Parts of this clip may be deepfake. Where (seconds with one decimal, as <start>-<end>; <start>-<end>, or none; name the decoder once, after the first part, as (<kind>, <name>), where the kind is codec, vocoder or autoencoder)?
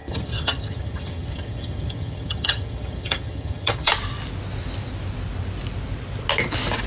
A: 0.0-3.9 (vocoder, HiFi-GAN)